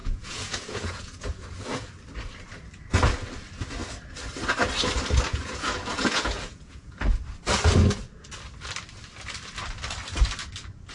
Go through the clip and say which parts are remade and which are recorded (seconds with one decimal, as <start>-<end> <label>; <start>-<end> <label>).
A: 0.0-1.9 remade; 1.9-5.3 recorded; 5.3-7.0 remade; 7.0-10.9 recorded